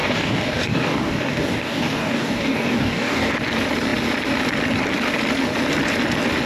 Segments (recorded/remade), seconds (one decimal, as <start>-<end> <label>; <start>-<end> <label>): 0.0-3.3 remade; 3.3-6.5 recorded